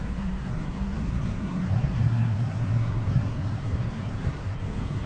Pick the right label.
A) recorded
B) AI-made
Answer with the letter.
B